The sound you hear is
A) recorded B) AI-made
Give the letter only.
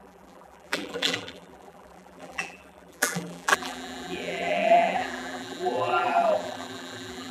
B